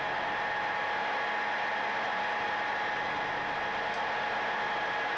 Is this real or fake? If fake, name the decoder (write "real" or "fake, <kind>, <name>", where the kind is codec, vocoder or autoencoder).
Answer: real